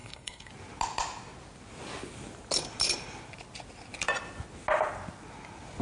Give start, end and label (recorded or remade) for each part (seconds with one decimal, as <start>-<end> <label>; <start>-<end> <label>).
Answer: 0.0-0.5 remade; 0.5-5.8 recorded